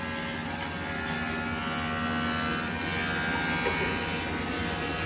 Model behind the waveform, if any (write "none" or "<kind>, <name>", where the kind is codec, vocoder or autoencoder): none